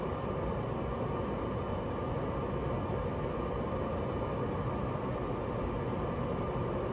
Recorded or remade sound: recorded